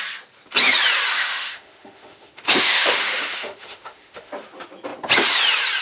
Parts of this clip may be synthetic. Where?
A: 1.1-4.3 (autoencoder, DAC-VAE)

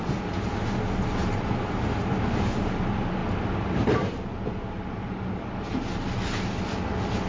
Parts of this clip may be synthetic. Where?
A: none

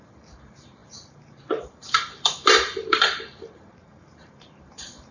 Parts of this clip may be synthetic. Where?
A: 0.0-5.1 (vocoder, BigVGAN v2)

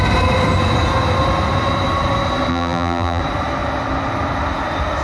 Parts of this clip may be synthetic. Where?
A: 2.5-3.2 (vocoder, BigVGAN v2)